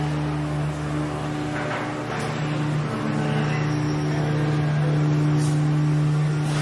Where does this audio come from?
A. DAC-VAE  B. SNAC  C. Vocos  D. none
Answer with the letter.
D